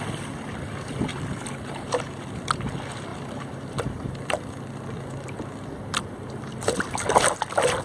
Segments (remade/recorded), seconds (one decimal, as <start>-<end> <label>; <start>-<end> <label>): 0.0-1.1 recorded; 1.1-2.0 remade; 2.0-3.1 recorded; 3.1-6.8 remade; 6.8-7.8 recorded